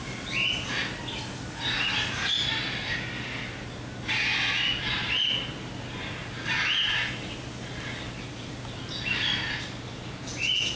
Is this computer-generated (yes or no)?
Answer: no